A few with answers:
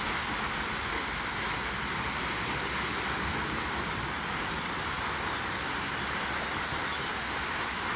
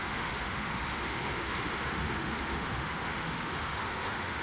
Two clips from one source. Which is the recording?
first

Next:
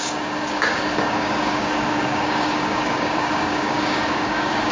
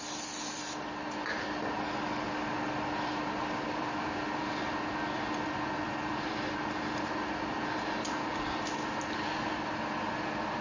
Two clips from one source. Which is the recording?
second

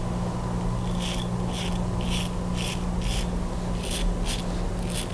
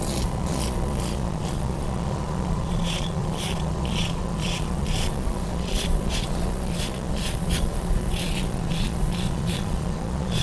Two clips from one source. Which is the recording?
first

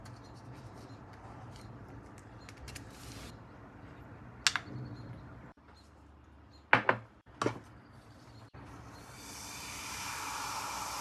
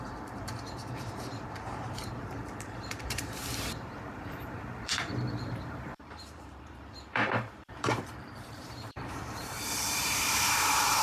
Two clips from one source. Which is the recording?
first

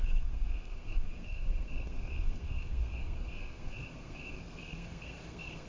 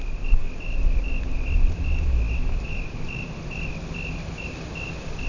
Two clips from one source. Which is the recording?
second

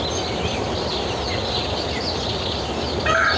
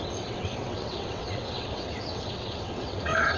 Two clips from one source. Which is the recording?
first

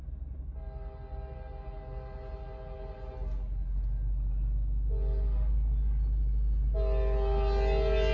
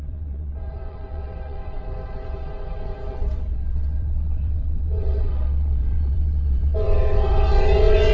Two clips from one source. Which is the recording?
first